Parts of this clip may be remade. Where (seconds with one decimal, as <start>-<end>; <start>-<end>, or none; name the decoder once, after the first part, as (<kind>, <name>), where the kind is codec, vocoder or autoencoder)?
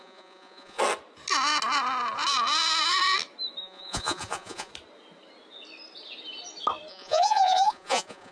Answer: 0.0-0.8 (vocoder, Vocos); 3.6-4.7; 6.9-8.3